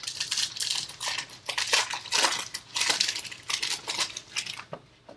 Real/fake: real